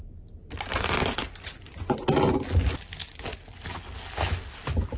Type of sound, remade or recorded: recorded